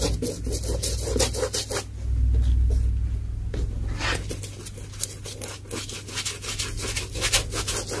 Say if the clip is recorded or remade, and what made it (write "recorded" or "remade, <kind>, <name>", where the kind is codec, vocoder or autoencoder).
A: recorded